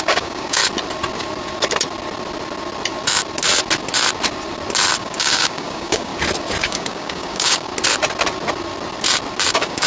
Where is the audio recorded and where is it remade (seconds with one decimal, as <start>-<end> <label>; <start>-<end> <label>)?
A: 0.0-0.6 remade; 0.6-5.0 recorded; 5.0-6.1 remade; 6.1-6.6 recorded; 6.6-7.7 remade; 7.7-9.5 recorded; 9.5-9.9 remade